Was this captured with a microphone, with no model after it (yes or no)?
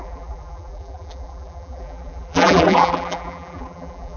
no